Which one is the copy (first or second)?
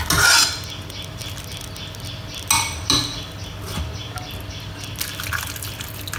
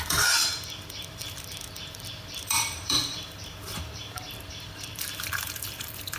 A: second